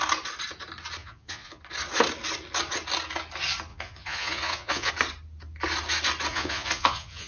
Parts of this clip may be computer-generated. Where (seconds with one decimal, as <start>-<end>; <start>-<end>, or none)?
1.0-1.6; 3.7-4.9; 6.3-7.3